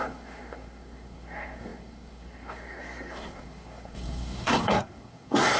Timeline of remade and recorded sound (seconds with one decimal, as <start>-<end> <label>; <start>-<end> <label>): 0.0-5.6 remade